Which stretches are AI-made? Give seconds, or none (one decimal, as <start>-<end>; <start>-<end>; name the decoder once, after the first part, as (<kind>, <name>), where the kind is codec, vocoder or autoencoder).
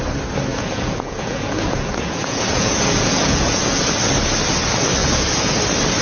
0.5-3.9 (vocoder, Vocos); 5.0-5.6